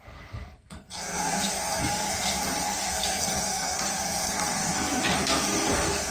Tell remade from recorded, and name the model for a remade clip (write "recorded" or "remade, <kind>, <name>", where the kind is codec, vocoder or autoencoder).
remade, codec, SNAC